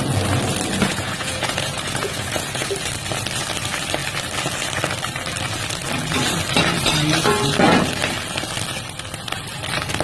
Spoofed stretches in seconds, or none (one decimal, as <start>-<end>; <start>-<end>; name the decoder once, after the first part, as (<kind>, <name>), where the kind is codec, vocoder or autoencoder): 0.9-2.7 (vocoder, Vocos)